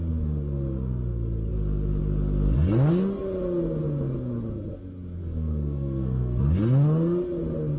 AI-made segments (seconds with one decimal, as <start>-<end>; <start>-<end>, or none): 5.2-6.4